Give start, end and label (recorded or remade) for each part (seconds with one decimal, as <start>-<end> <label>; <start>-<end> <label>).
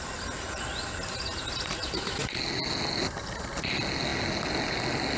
0.0-5.2 recorded